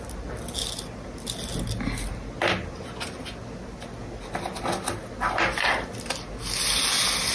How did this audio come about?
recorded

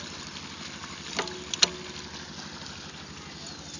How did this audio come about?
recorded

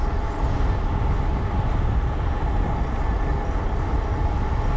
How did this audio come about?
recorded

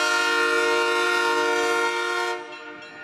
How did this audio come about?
recorded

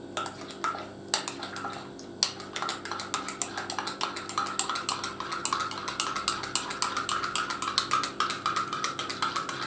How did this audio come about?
recorded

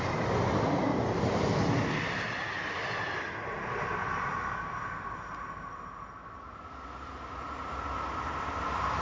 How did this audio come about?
recorded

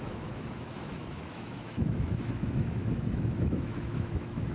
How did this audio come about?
remade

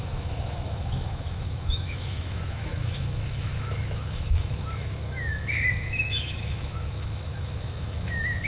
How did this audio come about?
remade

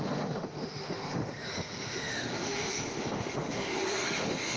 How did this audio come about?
remade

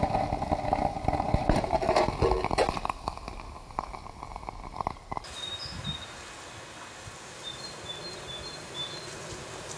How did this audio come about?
recorded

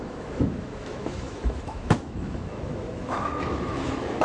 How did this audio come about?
remade